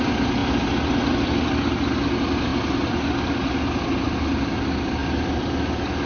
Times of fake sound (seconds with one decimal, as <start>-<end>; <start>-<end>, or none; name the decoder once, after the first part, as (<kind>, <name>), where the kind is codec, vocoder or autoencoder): none